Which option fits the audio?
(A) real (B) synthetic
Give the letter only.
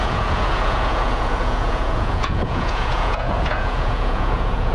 B